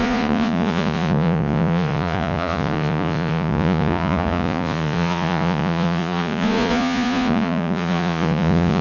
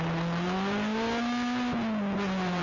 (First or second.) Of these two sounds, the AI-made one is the first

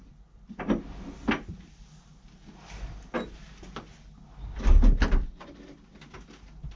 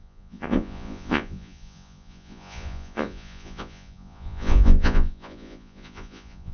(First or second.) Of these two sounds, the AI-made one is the second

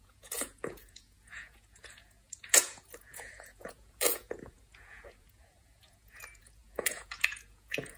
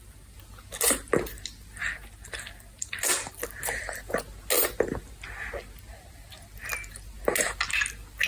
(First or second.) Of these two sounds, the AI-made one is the first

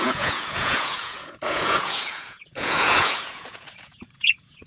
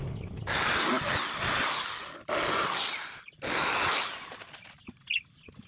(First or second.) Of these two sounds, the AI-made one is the first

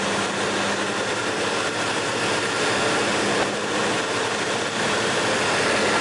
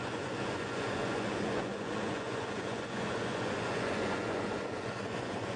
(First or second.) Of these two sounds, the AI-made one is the second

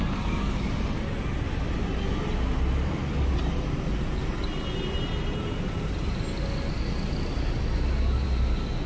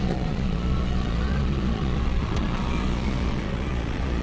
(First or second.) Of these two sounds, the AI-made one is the second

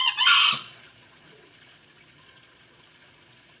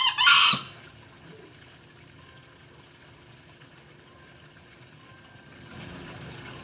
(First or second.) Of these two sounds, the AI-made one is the first